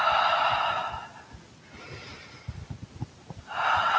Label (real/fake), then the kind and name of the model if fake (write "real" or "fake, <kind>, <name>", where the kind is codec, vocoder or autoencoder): real